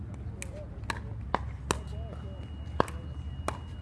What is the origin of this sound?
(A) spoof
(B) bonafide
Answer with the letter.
B